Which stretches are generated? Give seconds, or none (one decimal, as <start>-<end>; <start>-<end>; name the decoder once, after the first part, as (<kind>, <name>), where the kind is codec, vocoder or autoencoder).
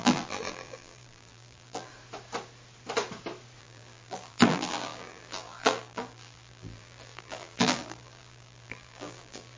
0.0-1.9 (vocoder, BigVGAN v2); 3.6-9.6